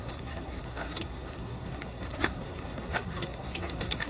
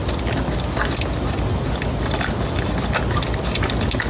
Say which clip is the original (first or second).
second